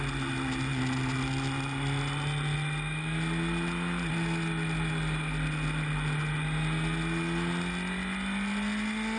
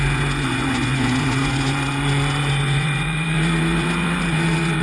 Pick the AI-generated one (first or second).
second